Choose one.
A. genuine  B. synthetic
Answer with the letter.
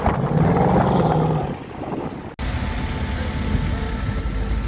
A